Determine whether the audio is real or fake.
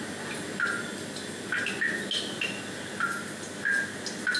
real